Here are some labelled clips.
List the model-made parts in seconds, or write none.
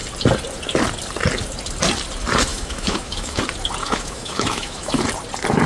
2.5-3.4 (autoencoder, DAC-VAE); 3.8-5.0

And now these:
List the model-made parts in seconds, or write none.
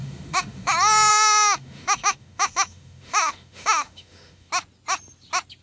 0.0-0.7 (autoencoder, DAC-VAE); 1.1-4.5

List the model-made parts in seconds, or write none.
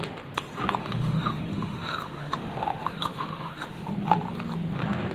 0.8-3.9 (autoencoder, DAC-VAE)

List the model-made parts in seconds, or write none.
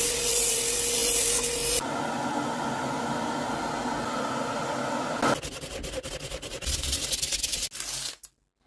none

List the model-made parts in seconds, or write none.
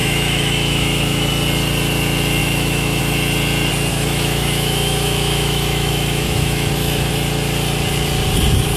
0.0-1.3 (autoencoder, DAC-VAE); 2.4-3.0; 3.9-7.1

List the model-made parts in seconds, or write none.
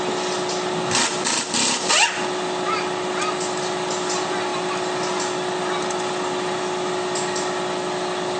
none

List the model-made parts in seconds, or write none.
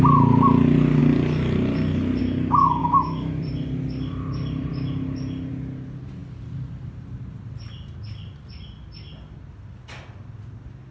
2.8-3.4 (autoencoder, DAC-VAE)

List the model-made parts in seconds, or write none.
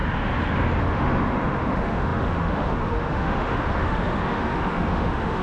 0.8-5.4 (autoencoder, DAC-VAE)